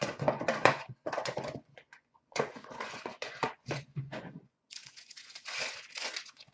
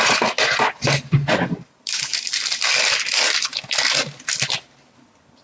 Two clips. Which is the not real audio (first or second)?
first